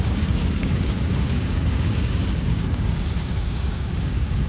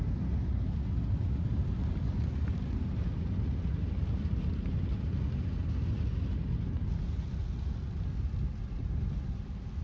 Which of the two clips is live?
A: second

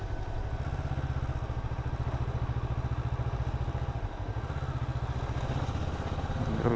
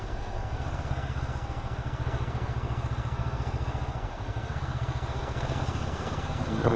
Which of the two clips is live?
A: first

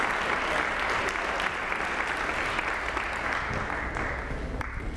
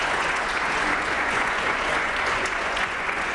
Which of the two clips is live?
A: first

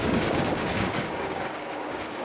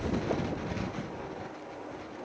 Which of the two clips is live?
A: second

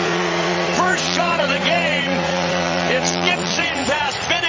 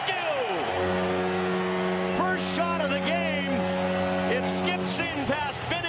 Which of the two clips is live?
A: second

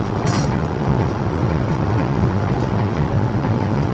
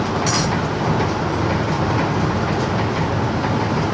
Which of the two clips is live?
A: second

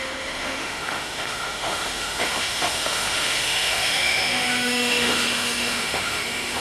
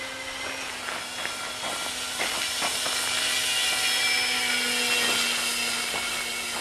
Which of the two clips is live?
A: second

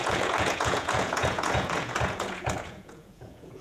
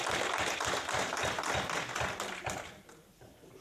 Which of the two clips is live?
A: second